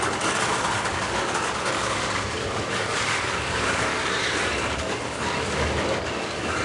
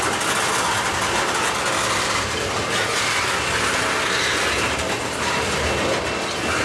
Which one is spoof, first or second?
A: first